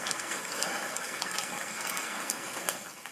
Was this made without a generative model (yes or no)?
no